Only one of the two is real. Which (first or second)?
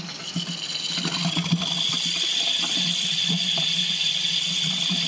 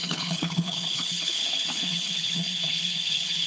first